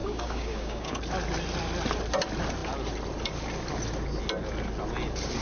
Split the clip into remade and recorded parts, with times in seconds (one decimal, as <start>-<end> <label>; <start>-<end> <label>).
0.0-1.0 remade; 1.0-5.4 recorded